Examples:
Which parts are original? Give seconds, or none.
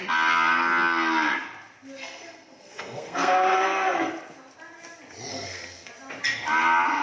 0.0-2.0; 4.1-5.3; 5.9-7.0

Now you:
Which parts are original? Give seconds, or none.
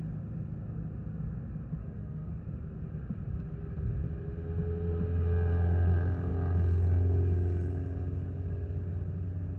0.0-1.8; 2.4-9.6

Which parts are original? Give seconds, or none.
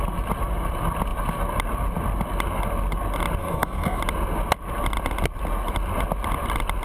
0.0-3.4; 4.0-6.8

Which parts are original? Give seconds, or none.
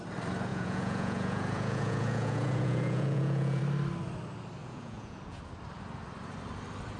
0.0-0.5; 3.6-4.6; 5.4-7.0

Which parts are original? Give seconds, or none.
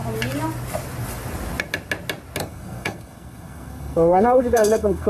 0.0-2.4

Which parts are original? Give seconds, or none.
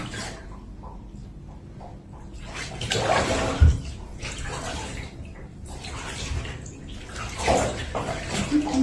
0.0-8.8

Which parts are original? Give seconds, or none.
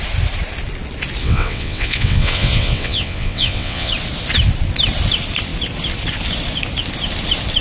0.0-1.2; 3.9-7.6